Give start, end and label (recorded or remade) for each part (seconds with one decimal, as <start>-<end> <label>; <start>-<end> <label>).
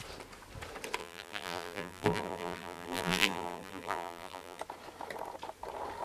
0.0-1.0 recorded; 1.0-4.6 remade; 4.6-6.0 recorded